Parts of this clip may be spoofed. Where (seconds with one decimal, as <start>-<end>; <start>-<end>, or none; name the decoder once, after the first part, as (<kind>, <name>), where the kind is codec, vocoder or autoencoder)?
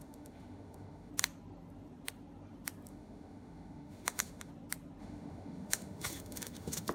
0.0-1.1 (autoencoder, DAC-VAE); 2.9-4.5; 5.0-6.9